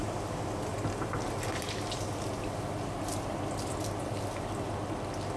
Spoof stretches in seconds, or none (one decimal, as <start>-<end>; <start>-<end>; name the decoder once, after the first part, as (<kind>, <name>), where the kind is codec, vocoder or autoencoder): none

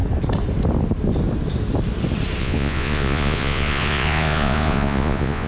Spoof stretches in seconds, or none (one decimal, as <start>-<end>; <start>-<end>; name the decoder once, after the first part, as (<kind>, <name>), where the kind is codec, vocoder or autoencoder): 2.4-5.5 (vocoder, Vocos)

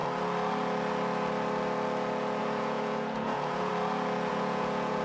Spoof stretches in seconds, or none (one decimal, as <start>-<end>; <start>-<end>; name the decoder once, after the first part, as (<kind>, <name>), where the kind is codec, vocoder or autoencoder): 2.4-3.7 (vocoder, Vocos); 4.3-5.0

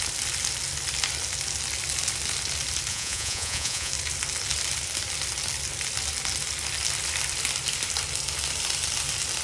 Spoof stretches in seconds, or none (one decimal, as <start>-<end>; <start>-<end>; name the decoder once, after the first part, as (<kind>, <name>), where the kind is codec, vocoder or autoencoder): 2.9-3.9 (vocoder, Vocos)